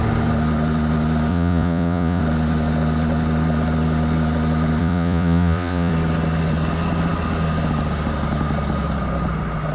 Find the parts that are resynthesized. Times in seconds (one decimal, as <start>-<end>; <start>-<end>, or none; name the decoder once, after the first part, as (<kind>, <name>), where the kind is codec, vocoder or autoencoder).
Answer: 1.3-2.2 (vocoder, Vocos); 4.8-5.9